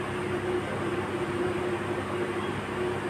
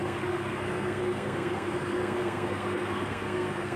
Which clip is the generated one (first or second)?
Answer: second